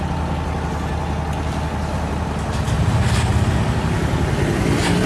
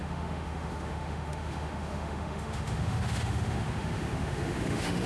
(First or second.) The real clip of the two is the first